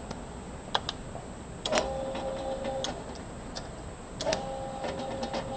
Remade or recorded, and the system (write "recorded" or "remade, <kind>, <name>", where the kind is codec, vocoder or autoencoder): recorded